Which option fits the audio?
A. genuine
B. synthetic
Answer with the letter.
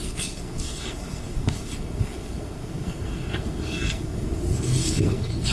B